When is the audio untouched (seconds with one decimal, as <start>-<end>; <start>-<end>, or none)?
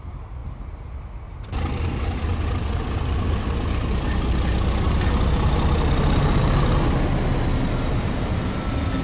0.0-9.0